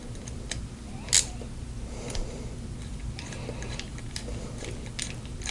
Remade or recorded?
recorded